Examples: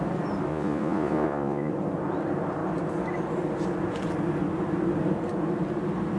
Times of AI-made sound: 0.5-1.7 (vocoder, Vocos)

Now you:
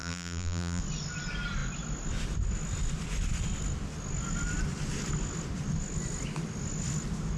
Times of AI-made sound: 0.0-0.8 (vocoder, BigVGAN v2)

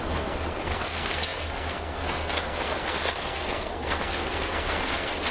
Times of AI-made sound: 0.0-5.3 (codec, SNAC)

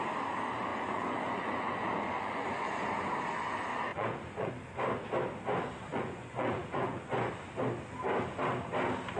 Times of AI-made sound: 0.7-2.9 (vocoder, Vocos); 3.9-4.5; 5.9-7.3

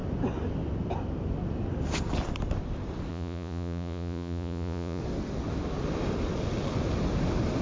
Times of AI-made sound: 3.1-5.0 (vocoder, Vocos)

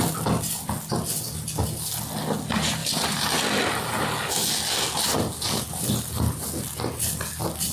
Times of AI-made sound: 2.8-3.4 (vocoder, BigVGAN v2)

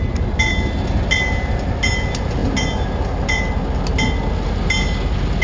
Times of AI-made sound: none